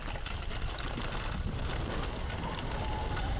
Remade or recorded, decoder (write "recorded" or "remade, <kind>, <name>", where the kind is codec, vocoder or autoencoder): recorded